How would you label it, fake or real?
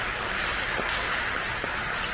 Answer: real